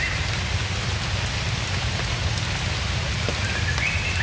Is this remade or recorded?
recorded